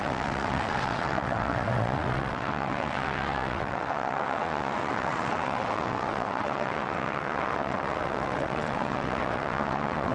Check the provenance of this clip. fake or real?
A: fake